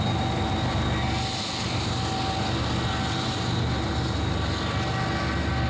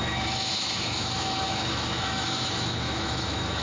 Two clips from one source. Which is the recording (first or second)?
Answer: first